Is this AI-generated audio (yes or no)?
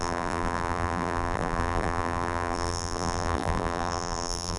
yes